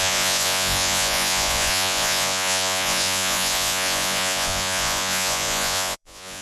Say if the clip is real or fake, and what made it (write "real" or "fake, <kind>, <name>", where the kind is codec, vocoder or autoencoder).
fake, vocoder, Vocos